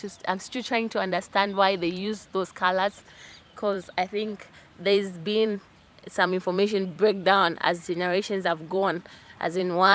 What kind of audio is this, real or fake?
fake